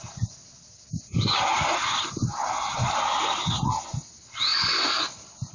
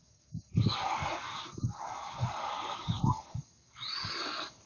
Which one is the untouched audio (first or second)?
first